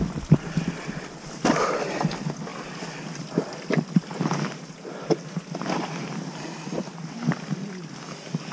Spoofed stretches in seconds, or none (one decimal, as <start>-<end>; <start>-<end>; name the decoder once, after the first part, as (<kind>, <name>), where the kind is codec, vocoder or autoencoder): none